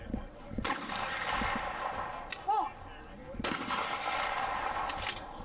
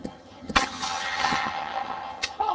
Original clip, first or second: first